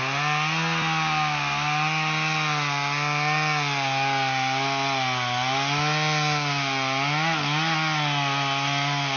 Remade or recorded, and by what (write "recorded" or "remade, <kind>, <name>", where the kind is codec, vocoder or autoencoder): recorded